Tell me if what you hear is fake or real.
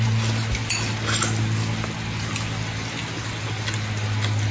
real